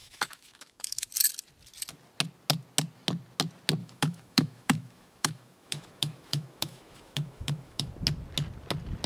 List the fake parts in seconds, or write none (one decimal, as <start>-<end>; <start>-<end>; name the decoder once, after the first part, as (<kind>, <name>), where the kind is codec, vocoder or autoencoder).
0.0-1.1 (autoencoder, DAC-VAE); 3.8-7.9